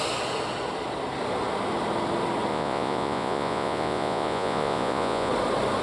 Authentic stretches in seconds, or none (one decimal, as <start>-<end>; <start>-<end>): 0.0-2.5; 5.3-5.8